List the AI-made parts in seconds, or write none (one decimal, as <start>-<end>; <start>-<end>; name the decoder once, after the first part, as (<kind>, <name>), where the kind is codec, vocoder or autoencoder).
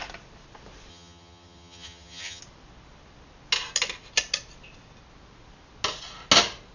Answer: 0.9-2.4 (vocoder, HiFi-GAN)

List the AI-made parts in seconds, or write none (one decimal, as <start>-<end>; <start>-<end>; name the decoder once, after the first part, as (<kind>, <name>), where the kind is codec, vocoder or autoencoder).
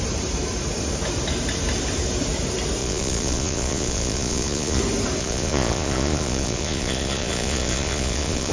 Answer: 2.8-4.8 (vocoder, Vocos); 5.2-8.5